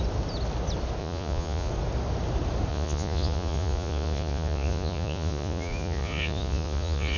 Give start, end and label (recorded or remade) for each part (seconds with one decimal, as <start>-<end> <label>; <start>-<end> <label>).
0.0-1.0 recorded; 1.0-1.7 remade; 1.7-2.7 recorded; 2.7-7.2 remade